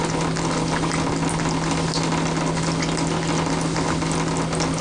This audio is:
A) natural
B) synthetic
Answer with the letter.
A